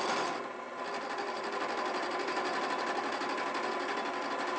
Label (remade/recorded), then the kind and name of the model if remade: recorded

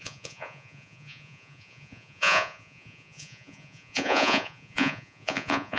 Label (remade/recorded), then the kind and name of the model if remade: remade, vocoder, Vocos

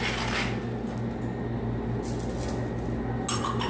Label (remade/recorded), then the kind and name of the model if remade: recorded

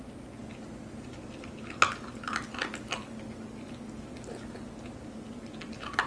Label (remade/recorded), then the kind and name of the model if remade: recorded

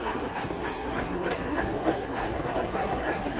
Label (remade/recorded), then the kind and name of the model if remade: remade, codec, SNAC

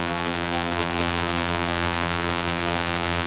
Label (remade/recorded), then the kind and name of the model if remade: remade, vocoder, BigVGAN v2